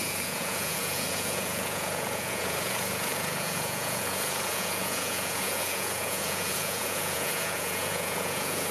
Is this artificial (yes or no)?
yes